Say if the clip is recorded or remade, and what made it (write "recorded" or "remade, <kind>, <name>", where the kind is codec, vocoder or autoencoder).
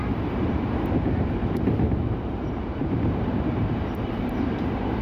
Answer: remade, vocoder, BigVGAN v2